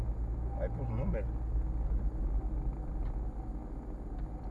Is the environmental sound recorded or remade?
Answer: recorded